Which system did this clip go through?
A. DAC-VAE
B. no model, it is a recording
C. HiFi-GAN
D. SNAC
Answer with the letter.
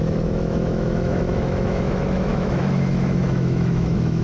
A